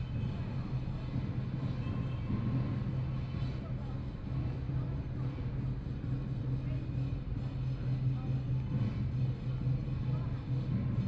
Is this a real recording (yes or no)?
yes